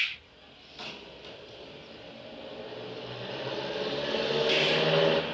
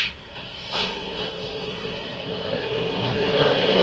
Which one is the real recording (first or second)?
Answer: first